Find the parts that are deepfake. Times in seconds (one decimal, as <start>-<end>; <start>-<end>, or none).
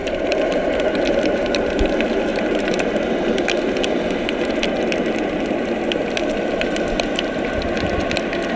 0.0-1.8; 2.3-2.9